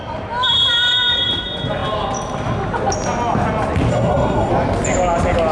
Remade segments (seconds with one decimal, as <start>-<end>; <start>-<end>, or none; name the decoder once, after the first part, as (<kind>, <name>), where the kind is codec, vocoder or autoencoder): 3.9-4.5 (codec, SNAC)